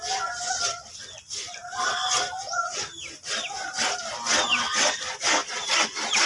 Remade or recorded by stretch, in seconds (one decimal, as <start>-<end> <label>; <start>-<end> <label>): 0.0-5.4 recorded; 5.4-6.3 remade